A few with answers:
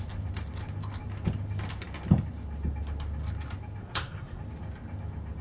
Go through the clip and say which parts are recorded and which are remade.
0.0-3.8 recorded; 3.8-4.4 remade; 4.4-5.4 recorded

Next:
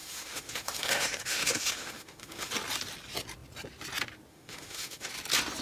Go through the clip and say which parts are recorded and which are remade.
0.0-2.5 remade; 2.5-4.3 recorded; 4.3-5.1 remade; 5.1-5.6 recorded

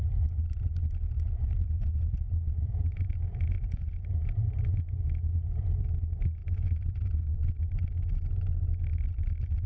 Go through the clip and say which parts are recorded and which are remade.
0.0-1.0 recorded; 1.0-4.2 remade; 4.2-6.4 recorded; 6.4-7.6 remade; 7.6-9.7 recorded